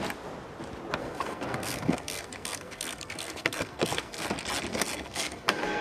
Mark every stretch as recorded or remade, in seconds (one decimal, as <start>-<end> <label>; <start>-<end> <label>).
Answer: 0.0-1.0 recorded; 1.0-4.3 remade; 4.3-4.7 recorded; 4.7-5.8 remade